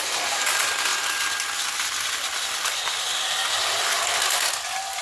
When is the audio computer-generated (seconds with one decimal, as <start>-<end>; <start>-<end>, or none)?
none